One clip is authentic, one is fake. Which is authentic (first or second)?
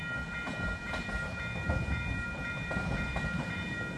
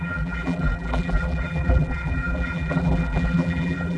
first